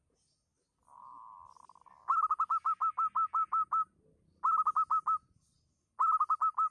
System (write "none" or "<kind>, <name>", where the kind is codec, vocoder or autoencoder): none